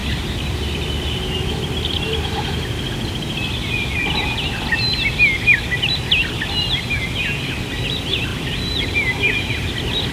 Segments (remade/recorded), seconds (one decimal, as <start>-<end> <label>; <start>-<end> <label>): 0.0-1.5 remade; 1.5-8.3 recorded; 8.3-9.7 remade; 9.7-10.1 recorded